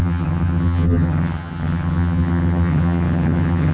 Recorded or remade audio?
remade